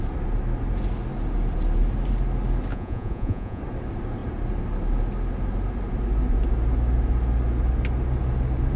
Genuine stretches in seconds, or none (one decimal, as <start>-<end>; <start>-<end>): 0.0-2.7; 3.6-8.8